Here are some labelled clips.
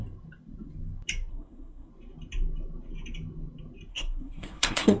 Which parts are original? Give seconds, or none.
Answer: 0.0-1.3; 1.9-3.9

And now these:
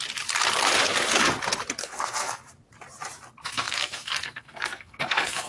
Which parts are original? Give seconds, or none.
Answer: 0.0-1.8; 2.4-3.4

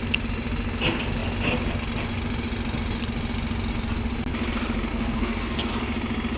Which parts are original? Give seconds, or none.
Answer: 0.0-4.9; 5.7-6.4

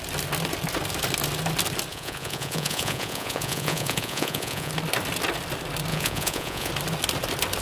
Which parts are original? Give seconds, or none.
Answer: 0.0-1.9; 4.7-5.9; 6.7-7.6

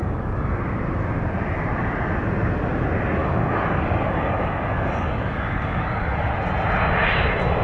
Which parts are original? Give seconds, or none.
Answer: 0.6-3.2; 6.3-7.6

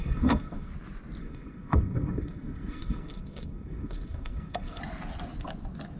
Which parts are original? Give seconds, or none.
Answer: 0.7-1.2; 4.8-6.0